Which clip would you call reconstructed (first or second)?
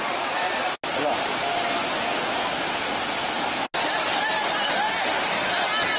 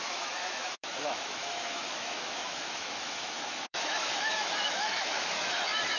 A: second